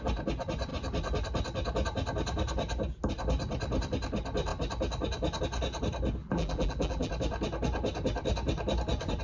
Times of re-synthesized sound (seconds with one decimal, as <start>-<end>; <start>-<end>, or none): 6.2-7.1